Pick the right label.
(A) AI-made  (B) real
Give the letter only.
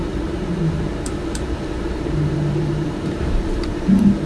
A